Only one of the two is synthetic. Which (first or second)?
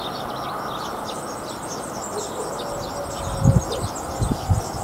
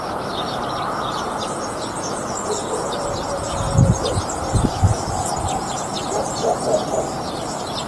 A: second